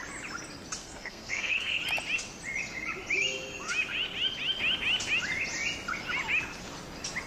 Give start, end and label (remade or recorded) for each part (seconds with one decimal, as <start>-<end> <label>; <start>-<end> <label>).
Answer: 0.0-0.8 recorded; 0.8-1.8 remade; 1.8-7.3 recorded